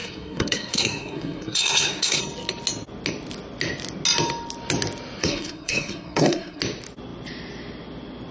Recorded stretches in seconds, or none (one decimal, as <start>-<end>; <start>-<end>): 2.2-5.2; 6.6-8.3